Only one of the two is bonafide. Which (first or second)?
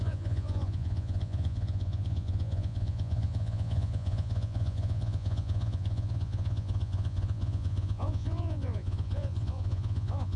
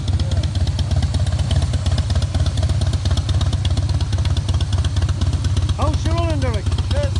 second